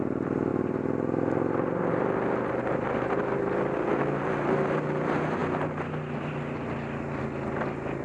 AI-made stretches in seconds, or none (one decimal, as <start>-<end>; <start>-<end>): none